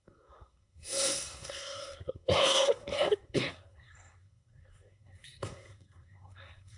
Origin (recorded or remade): remade